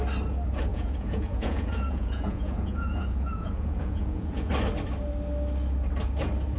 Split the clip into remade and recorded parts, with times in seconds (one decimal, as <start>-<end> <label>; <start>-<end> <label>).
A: 0.0-0.7 recorded; 0.7-4.5 remade; 4.5-6.6 recorded